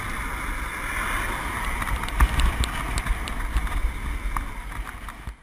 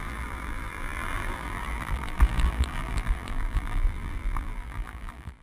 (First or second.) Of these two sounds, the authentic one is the first